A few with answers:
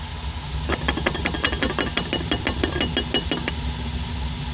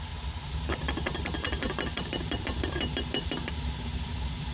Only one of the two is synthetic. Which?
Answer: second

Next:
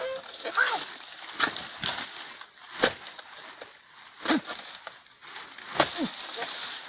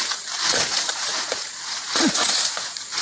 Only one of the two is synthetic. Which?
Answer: second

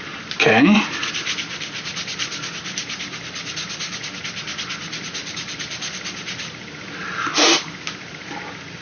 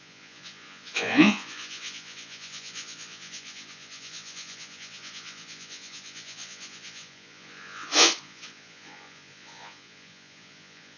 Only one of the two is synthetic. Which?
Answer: second